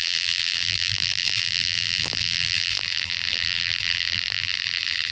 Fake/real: fake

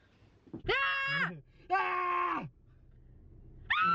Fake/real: real